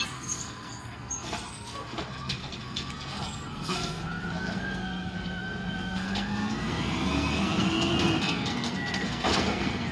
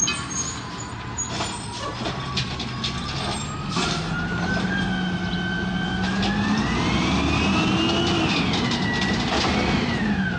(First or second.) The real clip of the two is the second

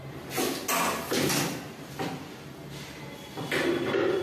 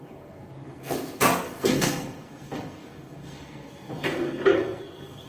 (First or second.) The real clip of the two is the first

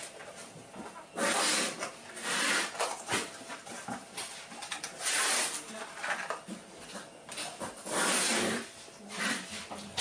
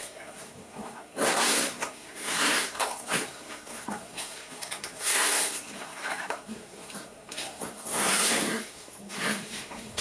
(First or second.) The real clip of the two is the first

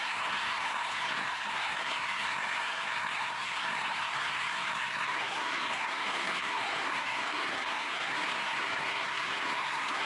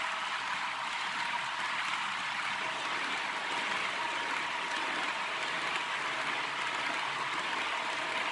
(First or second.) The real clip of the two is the second